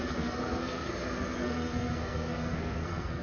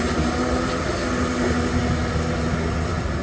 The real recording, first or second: second